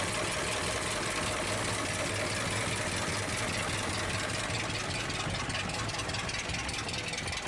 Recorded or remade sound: recorded